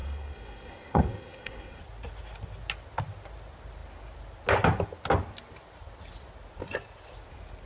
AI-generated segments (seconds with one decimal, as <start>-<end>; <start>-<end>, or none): 0.0-1.8